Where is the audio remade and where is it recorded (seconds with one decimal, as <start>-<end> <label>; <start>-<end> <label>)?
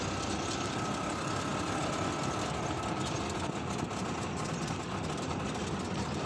0.0-6.3 recorded